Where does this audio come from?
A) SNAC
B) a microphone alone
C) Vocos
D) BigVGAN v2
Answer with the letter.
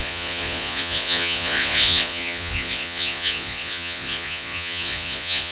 C